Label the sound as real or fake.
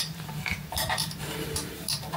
real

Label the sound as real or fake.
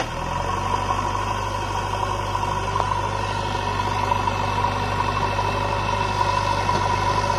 real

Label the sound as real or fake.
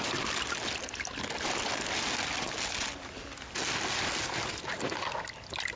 real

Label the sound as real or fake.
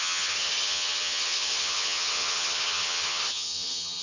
fake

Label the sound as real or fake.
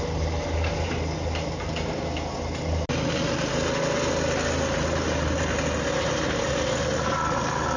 real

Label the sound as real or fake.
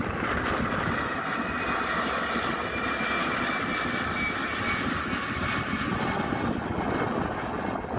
real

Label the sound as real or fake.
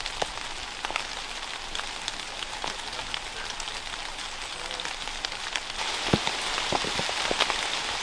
real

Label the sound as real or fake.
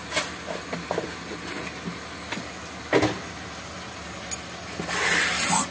real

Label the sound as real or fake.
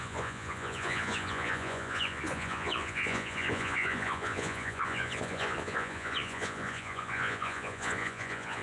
fake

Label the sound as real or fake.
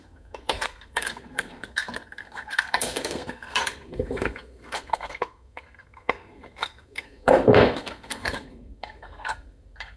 fake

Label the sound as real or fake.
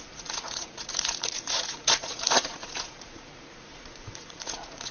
fake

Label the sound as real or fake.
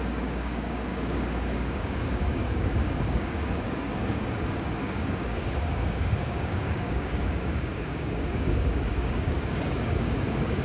fake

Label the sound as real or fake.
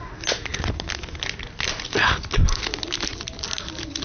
real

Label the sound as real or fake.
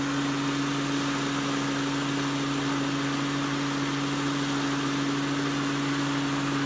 real